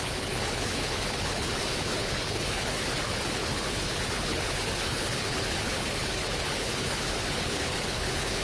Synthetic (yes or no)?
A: yes